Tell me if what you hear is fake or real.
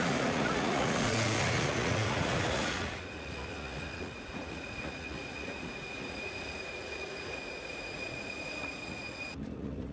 fake